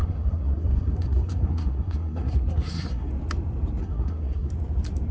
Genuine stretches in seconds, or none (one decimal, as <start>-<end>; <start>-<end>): 3.1-3.8; 4.5-5.1